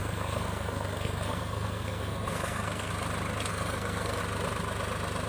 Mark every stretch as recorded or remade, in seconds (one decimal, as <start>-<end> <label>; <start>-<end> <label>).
0.0-2.9 remade; 2.9-3.5 recorded; 3.5-4.2 remade; 4.2-5.3 recorded